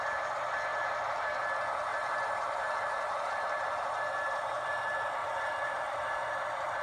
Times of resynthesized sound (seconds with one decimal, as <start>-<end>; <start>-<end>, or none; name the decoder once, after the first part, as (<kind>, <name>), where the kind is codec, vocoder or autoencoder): 0.7-1.4 (vocoder, BigVGAN v2); 1.9-3.9; 5.2-6.3